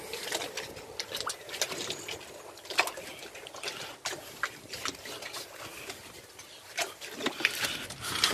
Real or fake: real